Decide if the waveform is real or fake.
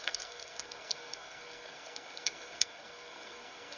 fake